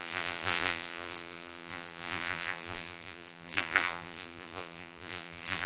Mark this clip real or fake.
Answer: fake